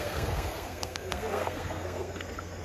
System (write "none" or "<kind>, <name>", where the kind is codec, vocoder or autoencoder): codec, SNAC